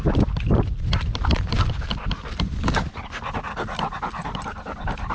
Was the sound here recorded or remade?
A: recorded